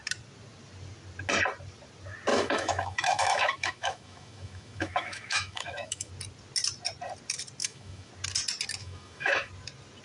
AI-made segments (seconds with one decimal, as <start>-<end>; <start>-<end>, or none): 2.3-6.1; 7.6-8.1; 8.8-9.5